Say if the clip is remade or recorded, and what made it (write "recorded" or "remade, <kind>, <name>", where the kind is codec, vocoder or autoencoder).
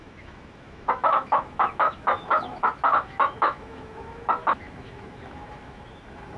remade, autoencoder, DAC-VAE